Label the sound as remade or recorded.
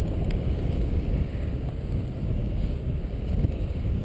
remade